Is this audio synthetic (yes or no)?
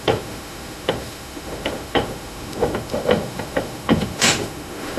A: yes